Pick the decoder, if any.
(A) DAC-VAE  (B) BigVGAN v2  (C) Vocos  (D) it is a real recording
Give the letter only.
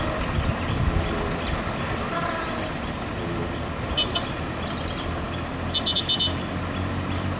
D